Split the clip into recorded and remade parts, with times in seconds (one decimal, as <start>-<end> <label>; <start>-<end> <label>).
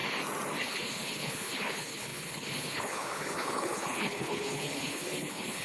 0.0-0.6 recorded; 0.6-5.6 remade